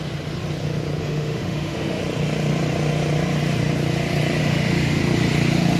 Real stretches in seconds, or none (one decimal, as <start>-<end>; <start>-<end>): 0.0-1.0; 2.0-4.4; 5.0-5.8